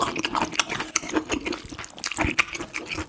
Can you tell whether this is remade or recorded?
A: recorded